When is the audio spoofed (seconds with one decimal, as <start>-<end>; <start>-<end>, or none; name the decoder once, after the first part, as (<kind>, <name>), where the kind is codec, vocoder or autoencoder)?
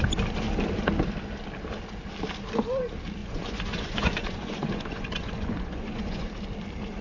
3.2-6.3 (vocoder, Vocos)